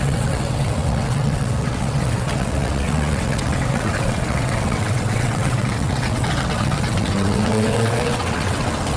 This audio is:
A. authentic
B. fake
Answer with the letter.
B